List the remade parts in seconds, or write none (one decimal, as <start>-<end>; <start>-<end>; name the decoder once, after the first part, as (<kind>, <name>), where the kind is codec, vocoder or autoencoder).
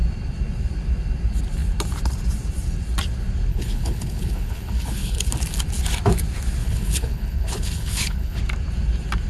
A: 3.5-5.3 (codec, HILCodec); 6.6-8.4